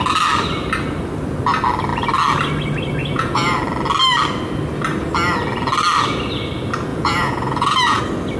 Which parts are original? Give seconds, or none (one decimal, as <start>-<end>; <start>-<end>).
0.0-3.0; 3.6-6.9; 8.0-8.4